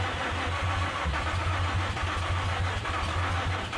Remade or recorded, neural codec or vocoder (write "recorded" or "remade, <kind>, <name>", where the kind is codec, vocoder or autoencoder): recorded